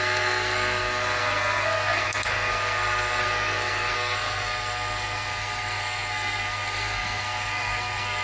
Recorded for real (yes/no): no